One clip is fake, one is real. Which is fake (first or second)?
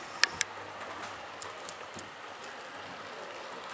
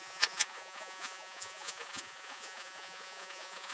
second